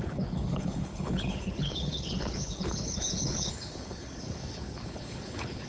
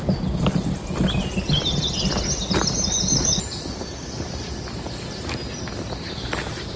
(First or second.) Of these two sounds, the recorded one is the second